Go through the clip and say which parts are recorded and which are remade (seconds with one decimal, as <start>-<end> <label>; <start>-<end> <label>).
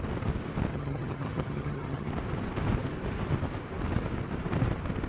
0.0-0.7 recorded; 0.7-2.1 remade; 2.1-5.1 recorded